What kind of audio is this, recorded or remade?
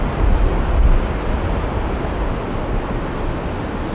recorded